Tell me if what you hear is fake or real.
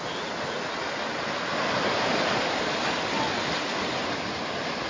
real